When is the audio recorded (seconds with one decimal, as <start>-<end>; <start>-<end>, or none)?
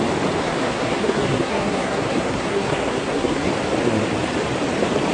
0.0-0.4; 3.5-5.1